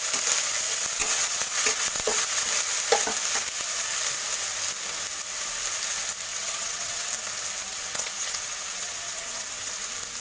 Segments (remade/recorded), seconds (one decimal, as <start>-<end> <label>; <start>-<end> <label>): 0.0-1.0 recorded; 1.0-2.4 remade; 2.4-6.3 recorded; 6.3-7.1 remade; 7.1-7.7 recorded; 7.7-9.7 remade; 9.7-10.2 recorded